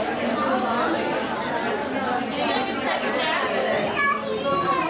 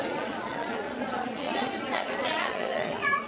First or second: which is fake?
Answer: second